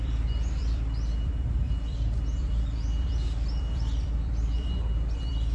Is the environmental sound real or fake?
fake